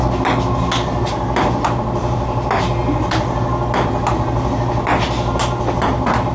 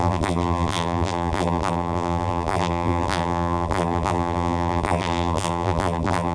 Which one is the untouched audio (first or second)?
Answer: first